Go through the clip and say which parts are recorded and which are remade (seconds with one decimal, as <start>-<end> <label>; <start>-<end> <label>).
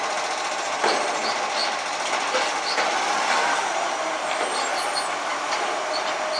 0.0-6.4 recorded